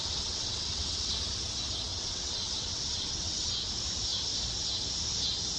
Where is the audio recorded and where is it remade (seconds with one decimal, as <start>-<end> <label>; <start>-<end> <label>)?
0.0-1.1 remade; 1.1-1.9 recorded; 1.9-3.5 remade; 3.5-5.6 recorded